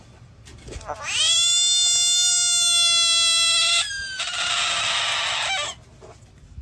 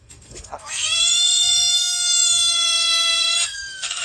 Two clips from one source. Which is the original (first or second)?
first